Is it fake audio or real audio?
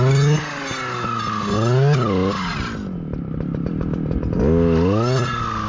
real